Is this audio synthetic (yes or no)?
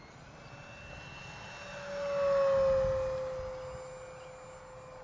no